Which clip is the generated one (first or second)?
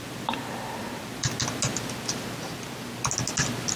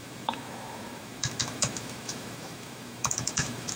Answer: second